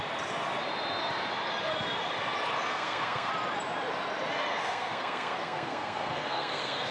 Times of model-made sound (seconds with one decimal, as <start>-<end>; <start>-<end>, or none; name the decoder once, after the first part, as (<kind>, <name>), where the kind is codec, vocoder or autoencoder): 2.7-3.3 (codec, SNAC); 4.5-6.9